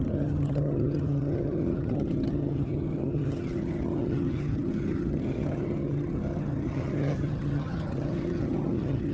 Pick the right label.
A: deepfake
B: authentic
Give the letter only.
A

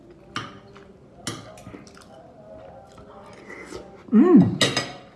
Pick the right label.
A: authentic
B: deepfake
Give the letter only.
A